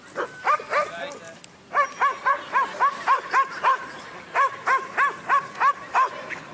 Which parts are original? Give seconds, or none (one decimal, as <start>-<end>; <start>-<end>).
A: 0.0-6.5